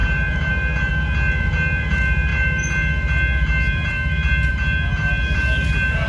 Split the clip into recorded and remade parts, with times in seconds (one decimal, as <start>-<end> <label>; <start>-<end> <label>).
0.0-0.5 remade; 0.5-6.1 recorded